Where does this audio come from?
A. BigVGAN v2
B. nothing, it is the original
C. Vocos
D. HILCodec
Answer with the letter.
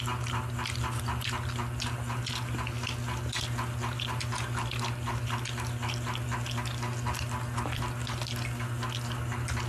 B